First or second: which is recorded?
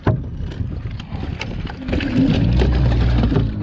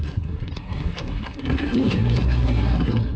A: first